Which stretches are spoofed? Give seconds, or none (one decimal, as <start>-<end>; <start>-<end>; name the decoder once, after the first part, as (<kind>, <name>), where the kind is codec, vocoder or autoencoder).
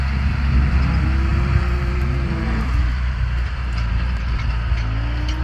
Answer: 1.3-4.5 (vocoder, BigVGAN v2)